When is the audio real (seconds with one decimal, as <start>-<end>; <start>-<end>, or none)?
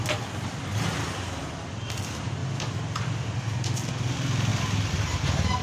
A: 0.0-5.6